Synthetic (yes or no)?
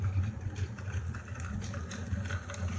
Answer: no